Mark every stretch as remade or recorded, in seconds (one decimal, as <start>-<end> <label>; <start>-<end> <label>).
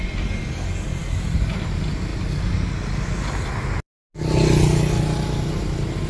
0.0-6.1 recorded